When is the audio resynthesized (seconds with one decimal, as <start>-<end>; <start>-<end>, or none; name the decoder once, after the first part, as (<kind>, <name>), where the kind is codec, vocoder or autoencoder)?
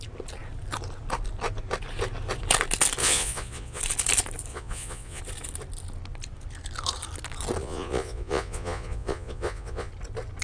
3.0-3.8 (vocoder, Vocos); 4.5-5.2; 7.6-9.9